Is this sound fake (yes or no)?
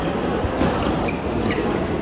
no